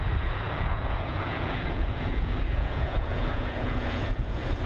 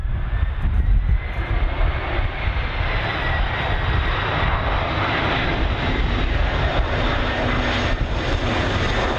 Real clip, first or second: second